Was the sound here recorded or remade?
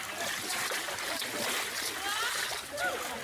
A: recorded